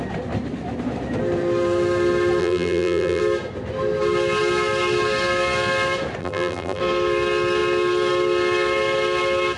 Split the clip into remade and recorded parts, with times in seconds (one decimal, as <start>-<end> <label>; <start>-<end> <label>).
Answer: 0.0-2.4 recorded; 2.4-3.2 remade; 3.2-6.2 recorded; 6.2-6.8 remade; 6.8-9.6 recorded